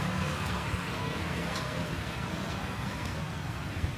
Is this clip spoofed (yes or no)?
yes